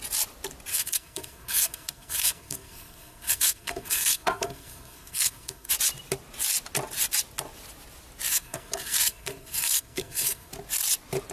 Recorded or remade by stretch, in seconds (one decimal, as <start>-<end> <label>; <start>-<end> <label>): 0.0-0.7 recorded; 0.7-5.7 remade; 5.7-8.3 recorded; 8.3-10.5 remade; 10.5-11.3 recorded